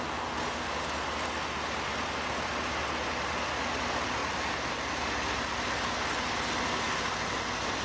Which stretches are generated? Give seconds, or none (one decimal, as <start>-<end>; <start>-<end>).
none